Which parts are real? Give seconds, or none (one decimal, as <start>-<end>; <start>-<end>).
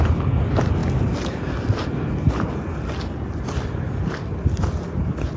0.0-5.4